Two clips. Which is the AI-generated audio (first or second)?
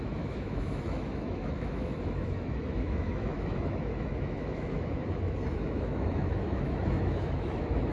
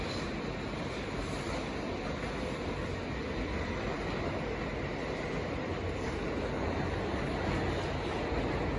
first